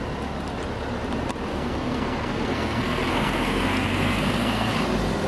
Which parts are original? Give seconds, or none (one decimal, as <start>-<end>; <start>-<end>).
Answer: 0.0-1.5; 4.7-5.3

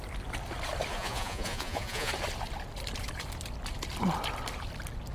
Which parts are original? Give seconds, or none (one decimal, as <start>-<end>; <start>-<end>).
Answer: 0.0-0.9; 2.1-5.1

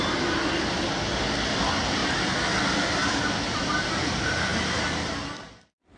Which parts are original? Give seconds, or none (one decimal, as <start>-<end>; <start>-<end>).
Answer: 0.0-2.0; 2.6-3.0; 3.9-6.0

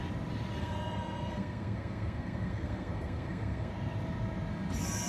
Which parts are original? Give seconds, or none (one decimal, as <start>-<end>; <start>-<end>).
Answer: 0.0-0.6; 3.7-5.1